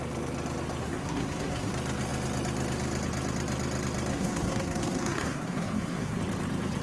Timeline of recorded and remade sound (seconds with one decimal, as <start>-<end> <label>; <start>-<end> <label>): 0.0-0.8 recorded; 0.8-1.7 remade; 1.7-4.1 recorded; 4.1-6.2 remade; 6.2-6.8 recorded

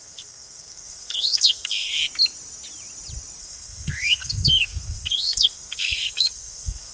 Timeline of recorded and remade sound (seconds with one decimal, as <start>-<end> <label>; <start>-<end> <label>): 0.0-2.0 remade; 2.0-3.4 recorded; 3.4-6.9 remade

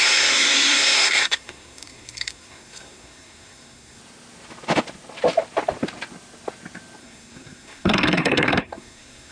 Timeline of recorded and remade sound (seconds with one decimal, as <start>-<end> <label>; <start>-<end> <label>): 0.0-4.0 remade; 4.0-7.0 recorded; 7.0-9.3 remade

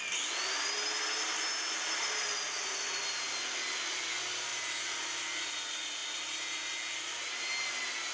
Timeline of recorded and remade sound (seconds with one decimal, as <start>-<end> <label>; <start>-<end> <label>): 0.0-8.1 recorded